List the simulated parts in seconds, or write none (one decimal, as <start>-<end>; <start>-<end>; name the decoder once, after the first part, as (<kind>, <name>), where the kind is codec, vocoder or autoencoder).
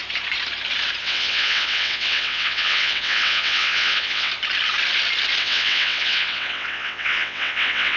1.0-4.3 (vocoder, WaveNeXt); 5.4-8.0